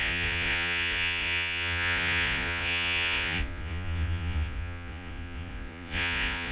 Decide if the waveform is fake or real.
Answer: fake